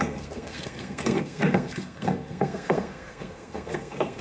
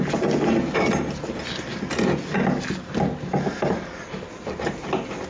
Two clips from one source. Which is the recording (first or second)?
second